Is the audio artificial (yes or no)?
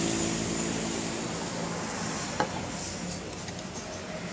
no